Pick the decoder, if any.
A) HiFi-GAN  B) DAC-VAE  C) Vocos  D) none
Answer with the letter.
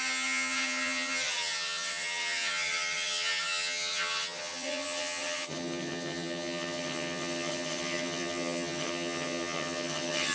A